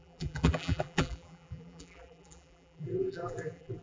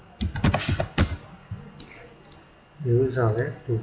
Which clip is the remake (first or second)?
first